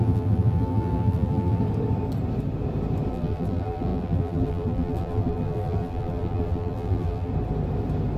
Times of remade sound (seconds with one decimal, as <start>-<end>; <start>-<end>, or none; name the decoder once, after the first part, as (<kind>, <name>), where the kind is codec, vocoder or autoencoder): 0.0-1.6 (vocoder, BigVGAN v2); 3.1-7.3